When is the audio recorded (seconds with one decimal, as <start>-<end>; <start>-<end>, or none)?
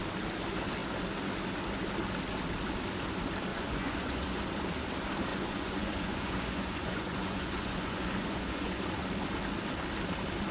0.0-3.5; 4.4-5.3; 8.8-10.5